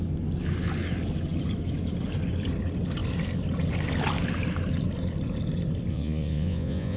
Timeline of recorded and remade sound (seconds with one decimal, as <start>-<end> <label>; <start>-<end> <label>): 0.0-5.9 recorded; 5.9-7.0 remade